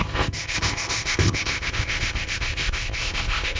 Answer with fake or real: fake